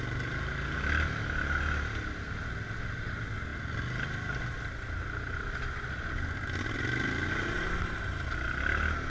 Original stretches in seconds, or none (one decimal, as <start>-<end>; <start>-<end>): 0.0-9.1